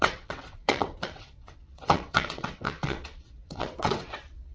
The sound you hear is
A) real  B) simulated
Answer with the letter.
B